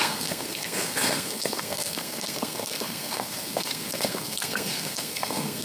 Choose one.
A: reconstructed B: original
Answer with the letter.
A